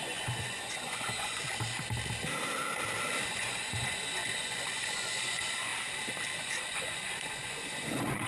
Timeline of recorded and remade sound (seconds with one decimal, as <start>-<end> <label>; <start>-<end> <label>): 0.0-1.4 remade; 1.4-3.1 recorded; 3.1-5.7 remade; 5.7-6.4 recorded; 6.4-8.3 remade